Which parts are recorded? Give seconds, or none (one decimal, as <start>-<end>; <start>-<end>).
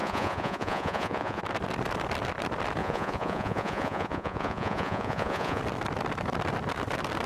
1.4-2.8; 5.6-7.3